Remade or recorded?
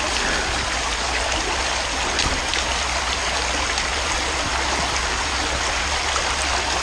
recorded